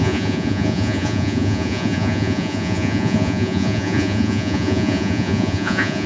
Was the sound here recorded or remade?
remade